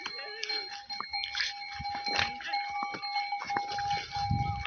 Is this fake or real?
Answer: real